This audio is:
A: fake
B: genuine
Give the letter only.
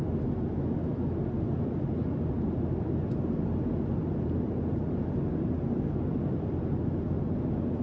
B